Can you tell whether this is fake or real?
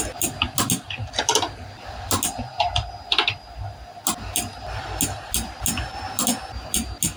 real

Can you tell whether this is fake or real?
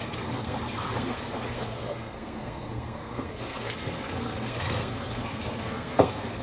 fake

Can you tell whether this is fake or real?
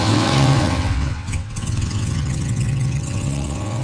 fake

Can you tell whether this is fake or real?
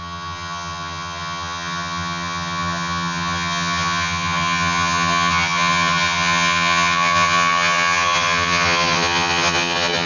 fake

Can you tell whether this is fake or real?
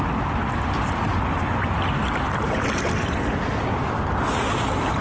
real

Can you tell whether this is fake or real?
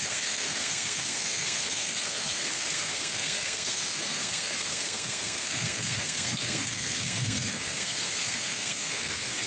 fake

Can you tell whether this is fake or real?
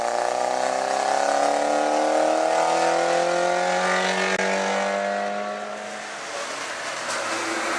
real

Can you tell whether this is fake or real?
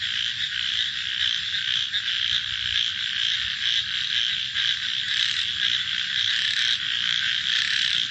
real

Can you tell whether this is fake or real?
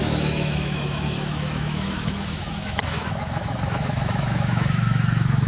fake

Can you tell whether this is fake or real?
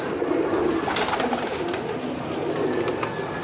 real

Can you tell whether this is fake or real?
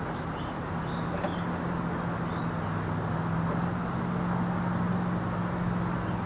real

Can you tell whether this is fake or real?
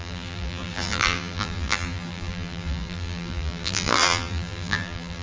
fake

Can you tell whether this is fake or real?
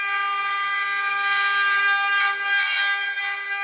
real